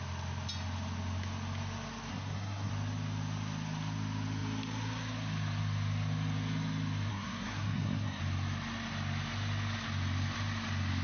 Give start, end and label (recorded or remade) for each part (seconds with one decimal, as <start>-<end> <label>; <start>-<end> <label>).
0.0-2.1 recorded; 2.1-2.7 remade; 2.7-7.1 recorded; 7.1-8.2 remade; 8.2-11.0 recorded